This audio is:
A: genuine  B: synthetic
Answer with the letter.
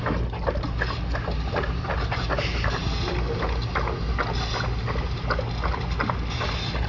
A